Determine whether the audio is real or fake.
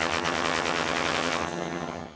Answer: fake